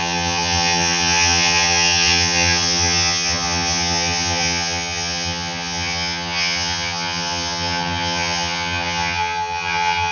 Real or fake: fake